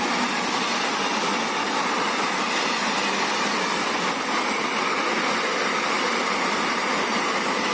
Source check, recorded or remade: recorded